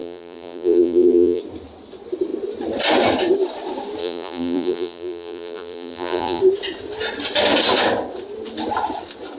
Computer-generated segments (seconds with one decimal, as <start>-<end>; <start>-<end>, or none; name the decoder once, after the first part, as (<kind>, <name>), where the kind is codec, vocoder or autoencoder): 0.0-1.4 (vocoder, BigVGAN v2); 4.0-6.4